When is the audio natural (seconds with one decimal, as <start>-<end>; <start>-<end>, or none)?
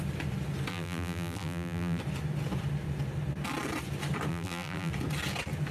0.0-0.7; 2.0-4.3; 4.9-5.7